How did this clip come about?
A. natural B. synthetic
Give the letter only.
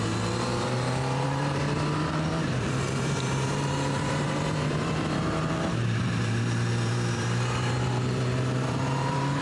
B